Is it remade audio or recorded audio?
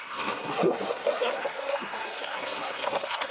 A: remade